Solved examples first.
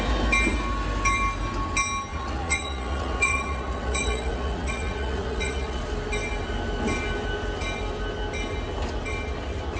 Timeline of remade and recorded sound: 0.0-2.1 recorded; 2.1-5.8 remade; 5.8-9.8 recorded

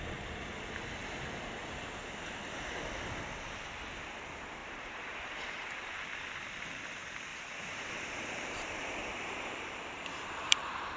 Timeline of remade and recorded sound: 0.0-4.6 recorded; 4.6-5.7 remade; 5.7-7.3 recorded; 7.3-11.0 remade

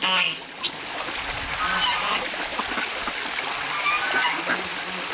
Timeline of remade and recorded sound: 0.0-5.1 recorded

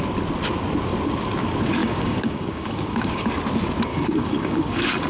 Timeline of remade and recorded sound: 0.0-1.8 recorded; 1.8-3.3 remade; 3.3-3.9 recorded; 3.9-5.1 remade

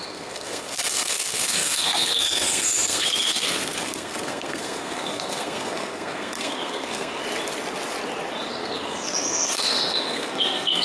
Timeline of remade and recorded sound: 0.0-7.2 remade; 7.2-8.5 recorded; 8.5-10.8 remade

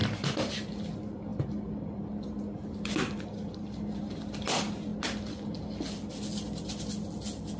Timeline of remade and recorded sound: 0.0-7.6 recorded

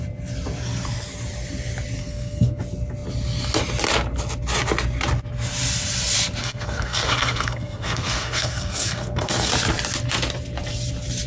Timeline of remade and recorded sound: 0.0-2.0 recorded; 2.0-2.6 remade; 2.6-6.4 recorded; 6.4-9.5 remade; 9.5-11.3 recorded